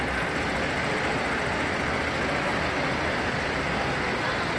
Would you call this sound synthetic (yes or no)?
no